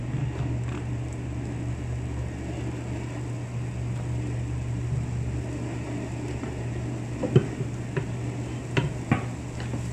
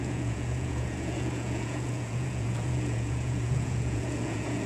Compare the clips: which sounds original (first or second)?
first